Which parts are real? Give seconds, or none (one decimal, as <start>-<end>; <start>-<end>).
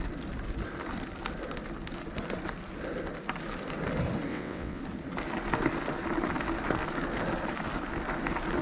0.0-4.3; 4.8-8.6